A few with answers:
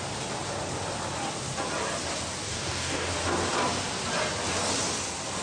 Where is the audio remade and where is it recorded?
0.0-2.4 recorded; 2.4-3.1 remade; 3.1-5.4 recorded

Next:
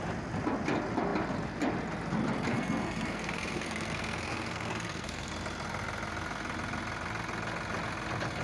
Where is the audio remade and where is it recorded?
0.0-2.5 recorded; 2.5-5.3 remade; 5.3-8.4 recorded

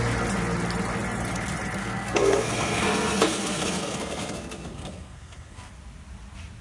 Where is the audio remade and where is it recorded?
0.0-1.8 recorded; 1.8-5.7 remade; 5.7-6.6 recorded

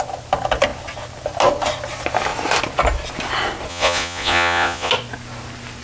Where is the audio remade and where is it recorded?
0.0-3.7 recorded; 3.7-4.9 remade; 4.9-5.8 recorded

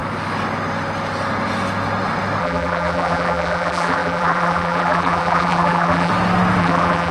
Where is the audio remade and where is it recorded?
0.0-2.4 recorded; 2.4-6.1 remade; 6.1-6.6 recorded; 6.6-7.1 remade

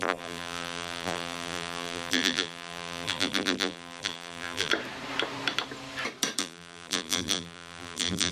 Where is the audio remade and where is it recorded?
0.0-4.7 remade; 4.7-6.4 recorded; 6.4-8.3 remade

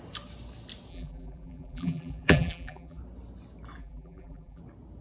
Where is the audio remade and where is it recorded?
0.0-0.9 recorded; 0.9-3.0 remade; 3.0-3.8 recorded; 3.8-4.6 remade; 4.6-5.0 recorded

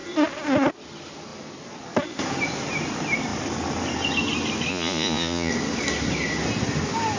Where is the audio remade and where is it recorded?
0.0-4.7 recorded; 4.7-5.5 remade; 5.5-7.2 recorded